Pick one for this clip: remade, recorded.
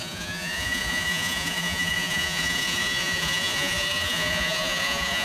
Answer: remade